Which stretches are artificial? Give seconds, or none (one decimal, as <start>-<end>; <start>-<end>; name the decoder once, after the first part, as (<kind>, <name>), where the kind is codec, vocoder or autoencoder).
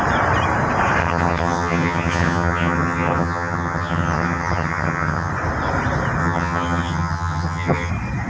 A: 1.0-5.3 (vocoder, HiFi-GAN); 6.2-7.9